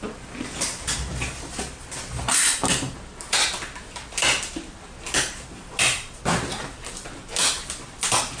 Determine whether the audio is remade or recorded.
recorded